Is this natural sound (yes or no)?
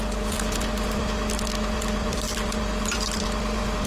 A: yes